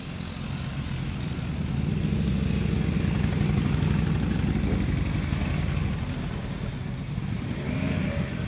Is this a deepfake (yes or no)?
no